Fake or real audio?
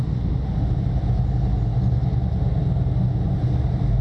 real